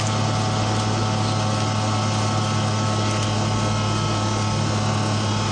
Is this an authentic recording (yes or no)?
yes